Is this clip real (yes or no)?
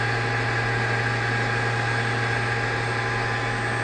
yes